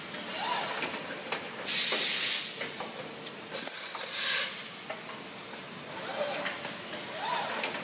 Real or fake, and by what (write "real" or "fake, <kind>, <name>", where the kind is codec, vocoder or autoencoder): real